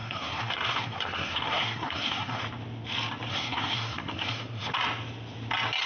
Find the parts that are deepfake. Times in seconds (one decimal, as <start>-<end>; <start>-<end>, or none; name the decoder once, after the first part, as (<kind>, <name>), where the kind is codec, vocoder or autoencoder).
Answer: 0.0-2.4 (codec, SNAC); 3.3-4.7